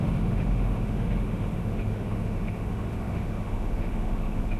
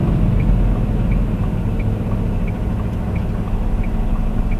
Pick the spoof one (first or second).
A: first